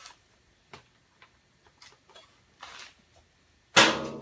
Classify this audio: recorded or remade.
recorded